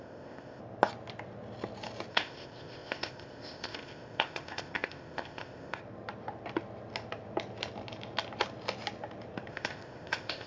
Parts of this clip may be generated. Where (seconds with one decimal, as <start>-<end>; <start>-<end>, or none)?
0.0-0.6; 2.1-5.8; 9.5-10.5